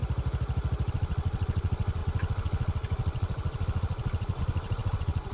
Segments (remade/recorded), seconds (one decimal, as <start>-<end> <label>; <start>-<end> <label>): 0.0-0.9 recorded; 0.9-5.3 remade